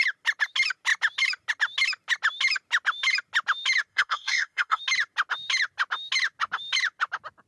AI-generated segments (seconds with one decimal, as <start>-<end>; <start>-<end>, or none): 3.9-4.8